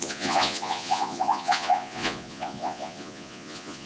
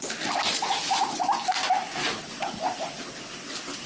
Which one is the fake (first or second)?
first